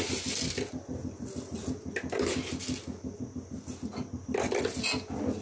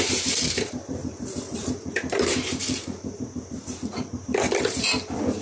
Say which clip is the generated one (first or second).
second